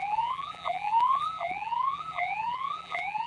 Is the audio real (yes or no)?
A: no